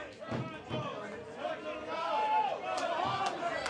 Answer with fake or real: real